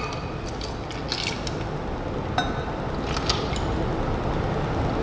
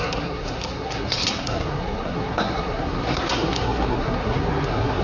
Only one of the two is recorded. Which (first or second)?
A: first